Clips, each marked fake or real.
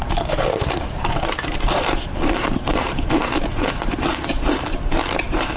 fake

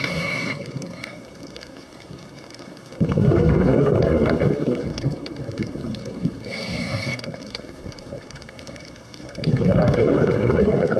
fake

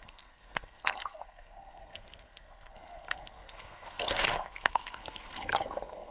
fake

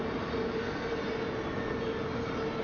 real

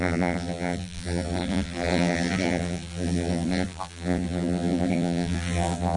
fake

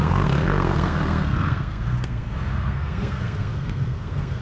fake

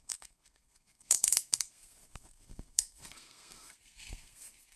fake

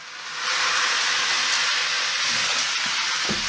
real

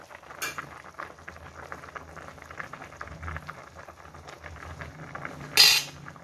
real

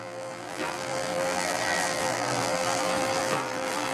fake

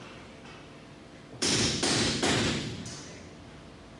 real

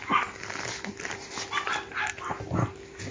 real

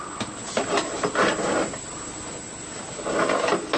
real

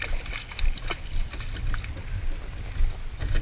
real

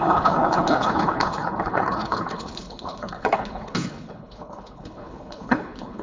fake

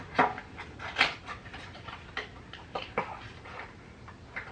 real